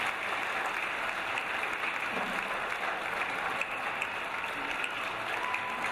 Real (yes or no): yes